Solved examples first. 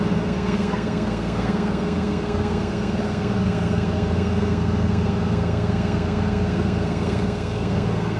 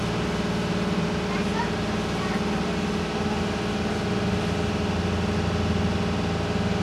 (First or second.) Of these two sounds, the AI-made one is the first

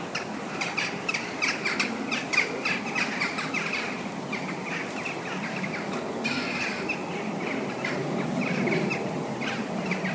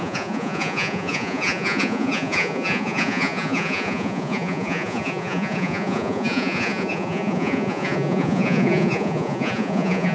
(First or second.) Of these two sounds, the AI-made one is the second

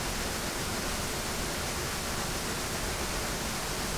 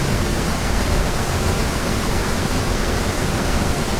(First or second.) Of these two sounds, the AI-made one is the second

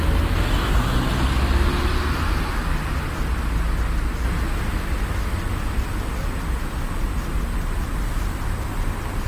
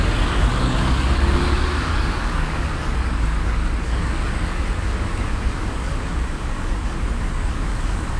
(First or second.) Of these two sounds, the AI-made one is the second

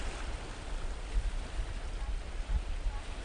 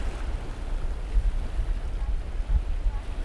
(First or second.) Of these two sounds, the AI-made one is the first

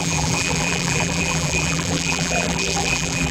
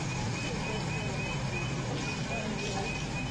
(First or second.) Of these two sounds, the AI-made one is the first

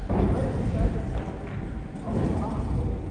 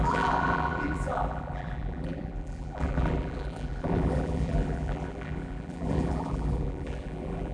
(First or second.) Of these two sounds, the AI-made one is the second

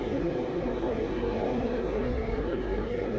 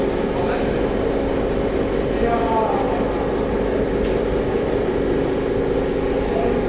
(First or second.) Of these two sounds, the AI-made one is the first